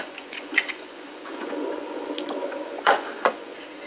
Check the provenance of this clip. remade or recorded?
remade